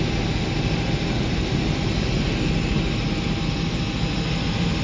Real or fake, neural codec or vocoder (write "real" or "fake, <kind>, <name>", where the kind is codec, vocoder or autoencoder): real